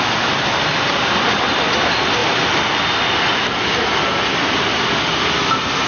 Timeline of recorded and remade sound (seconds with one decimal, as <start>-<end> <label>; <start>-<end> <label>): 0.0-5.9 recorded